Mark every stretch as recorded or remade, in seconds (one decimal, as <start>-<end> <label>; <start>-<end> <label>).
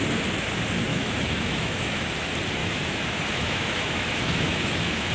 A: 0.0-0.9 recorded; 0.9-2.1 remade; 2.1-2.6 recorded; 2.6-5.1 remade